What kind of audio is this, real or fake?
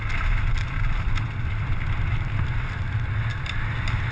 real